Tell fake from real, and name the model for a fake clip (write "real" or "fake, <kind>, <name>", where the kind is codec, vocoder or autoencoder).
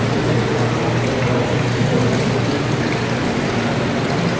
real